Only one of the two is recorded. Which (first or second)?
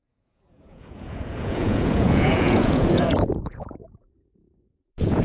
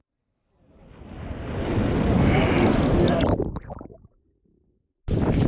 second